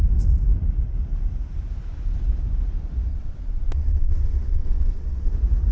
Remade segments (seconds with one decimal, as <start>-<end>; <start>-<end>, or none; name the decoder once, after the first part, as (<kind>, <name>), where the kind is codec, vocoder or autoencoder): 3.1-5.3 (vocoder, WaveNeXt)